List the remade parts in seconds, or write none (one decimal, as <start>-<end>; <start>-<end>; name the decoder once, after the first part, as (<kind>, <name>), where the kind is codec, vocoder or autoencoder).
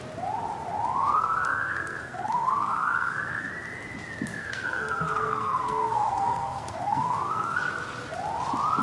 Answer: 1.0-3.5 (codec, SNAC); 4.3-7.7